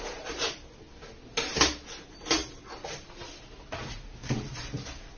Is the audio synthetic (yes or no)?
no